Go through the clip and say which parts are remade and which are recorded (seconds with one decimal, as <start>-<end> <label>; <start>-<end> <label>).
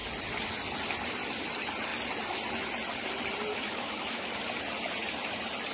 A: 0.0-3.5 recorded; 3.5-4.3 remade; 4.3-5.7 recorded